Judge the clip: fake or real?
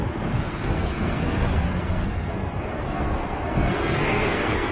fake